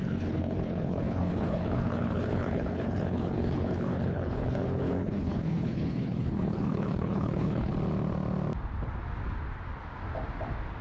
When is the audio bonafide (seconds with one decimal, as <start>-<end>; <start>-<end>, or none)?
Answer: 7.7-10.8